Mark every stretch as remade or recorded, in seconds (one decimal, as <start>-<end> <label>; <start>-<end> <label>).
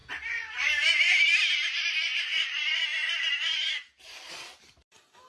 0.0-5.3 remade